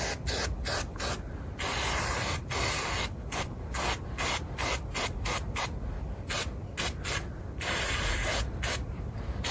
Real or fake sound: real